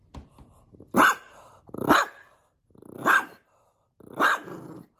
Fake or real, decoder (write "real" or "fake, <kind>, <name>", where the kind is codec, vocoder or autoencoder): real